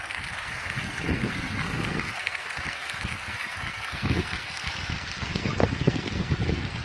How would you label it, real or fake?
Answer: fake